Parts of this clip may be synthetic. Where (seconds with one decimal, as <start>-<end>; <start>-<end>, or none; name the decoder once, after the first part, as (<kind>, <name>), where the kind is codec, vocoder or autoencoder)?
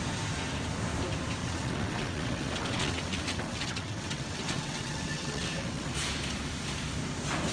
1.4-5.9 (vocoder, WaveNeXt)